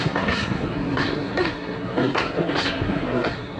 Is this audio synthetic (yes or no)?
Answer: yes